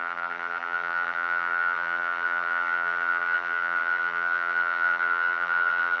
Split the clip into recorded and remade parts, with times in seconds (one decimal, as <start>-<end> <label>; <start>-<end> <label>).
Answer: 0.0-6.0 remade